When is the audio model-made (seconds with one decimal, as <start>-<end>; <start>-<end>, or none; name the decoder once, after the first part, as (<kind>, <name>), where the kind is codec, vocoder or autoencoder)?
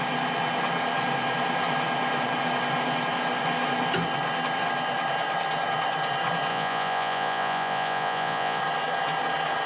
6.5-8.6 (vocoder, Vocos)